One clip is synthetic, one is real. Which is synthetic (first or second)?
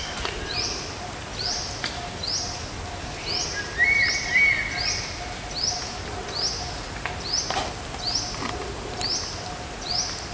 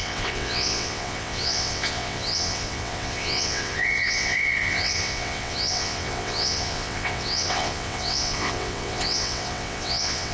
second